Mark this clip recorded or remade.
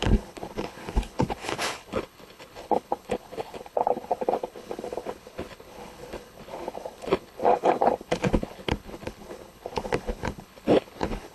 remade